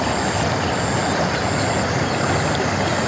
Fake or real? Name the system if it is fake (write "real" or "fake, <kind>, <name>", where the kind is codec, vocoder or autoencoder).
real